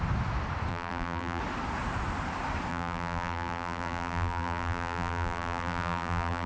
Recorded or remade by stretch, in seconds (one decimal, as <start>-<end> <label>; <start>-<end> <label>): 0.0-0.7 recorded; 0.7-1.4 remade; 1.4-2.7 recorded; 2.7-6.5 remade